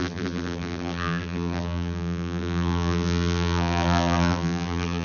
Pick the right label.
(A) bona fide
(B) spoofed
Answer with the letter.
B